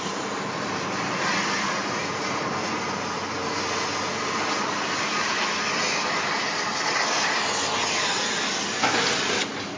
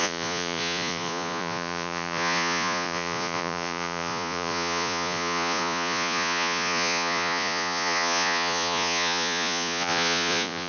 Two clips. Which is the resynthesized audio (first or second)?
second